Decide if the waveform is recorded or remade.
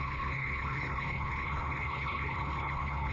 remade